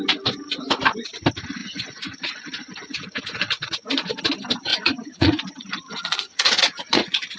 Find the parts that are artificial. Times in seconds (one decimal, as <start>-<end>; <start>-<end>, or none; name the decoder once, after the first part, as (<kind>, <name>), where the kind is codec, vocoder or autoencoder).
1.6-4.2 (vocoder, Vocos); 4.7-7.4